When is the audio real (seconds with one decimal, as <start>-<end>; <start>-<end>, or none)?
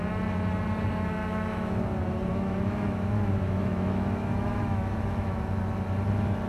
0.0-1.2; 1.8-2.3; 5.6-6.5